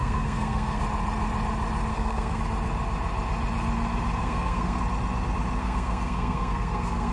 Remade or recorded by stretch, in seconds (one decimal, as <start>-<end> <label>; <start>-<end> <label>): 0.0-0.8 remade; 0.8-1.9 recorded; 1.9-2.4 remade; 2.4-4.2 recorded; 4.2-4.8 remade; 4.8-5.6 recorded; 5.6-7.1 remade